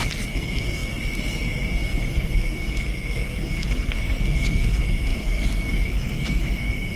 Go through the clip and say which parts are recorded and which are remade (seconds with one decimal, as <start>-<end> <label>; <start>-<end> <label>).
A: 0.0-7.0 remade

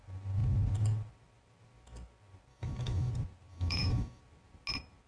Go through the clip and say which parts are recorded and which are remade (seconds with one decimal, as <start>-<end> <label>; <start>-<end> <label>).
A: 0.0-2.5 recorded; 2.5-3.1 remade; 3.1-3.5 recorded; 3.5-4.2 remade; 4.2-5.1 recorded

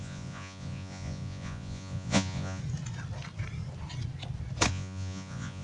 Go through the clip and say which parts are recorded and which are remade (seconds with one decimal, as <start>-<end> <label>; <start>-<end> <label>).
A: 0.0-2.6 remade; 2.6-4.7 recorded; 4.7-5.6 remade

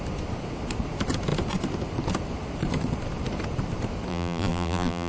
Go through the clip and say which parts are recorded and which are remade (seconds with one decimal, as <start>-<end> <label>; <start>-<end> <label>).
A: 0.0-4.1 recorded; 4.1-5.1 remade